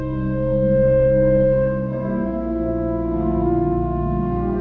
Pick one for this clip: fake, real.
fake